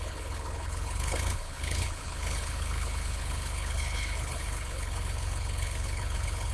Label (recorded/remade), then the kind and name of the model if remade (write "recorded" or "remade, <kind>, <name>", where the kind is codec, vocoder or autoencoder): remade, codec, HILCodec